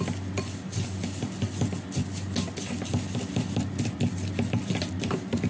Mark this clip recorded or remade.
recorded